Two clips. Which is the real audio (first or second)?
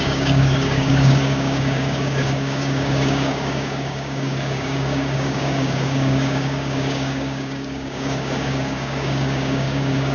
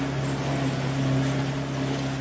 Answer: second